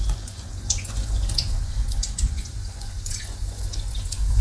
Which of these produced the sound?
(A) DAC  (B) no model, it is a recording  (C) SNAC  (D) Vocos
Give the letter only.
D